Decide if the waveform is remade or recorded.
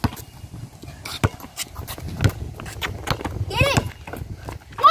recorded